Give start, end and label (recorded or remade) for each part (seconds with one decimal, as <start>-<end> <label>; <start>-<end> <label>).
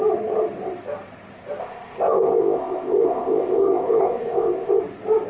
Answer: 0.0-1.6 recorded; 1.6-4.8 remade; 4.8-5.3 recorded